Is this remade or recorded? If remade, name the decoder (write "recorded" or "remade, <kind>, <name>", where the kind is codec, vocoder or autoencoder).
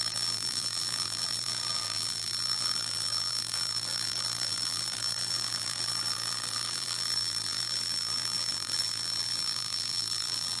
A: remade, vocoder, BigVGAN v2